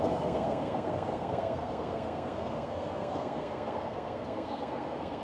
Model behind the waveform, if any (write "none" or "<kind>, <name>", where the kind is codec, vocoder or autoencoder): codec, SNAC